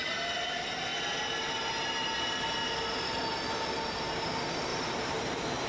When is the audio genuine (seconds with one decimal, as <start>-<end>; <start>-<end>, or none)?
0.0-4.7